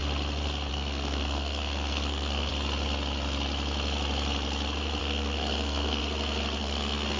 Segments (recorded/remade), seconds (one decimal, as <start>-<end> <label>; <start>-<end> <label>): 0.0-0.7 recorded; 0.7-2.5 remade; 2.5-5.0 recorded; 5.0-6.0 remade; 6.0-6.6 recorded; 6.6-7.2 remade